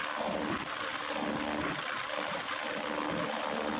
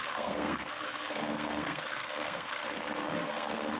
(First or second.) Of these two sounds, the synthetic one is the second